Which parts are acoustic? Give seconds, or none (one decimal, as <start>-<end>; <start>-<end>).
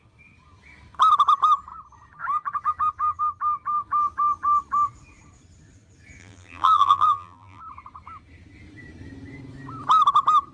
0.0-6.2; 7.6-10.5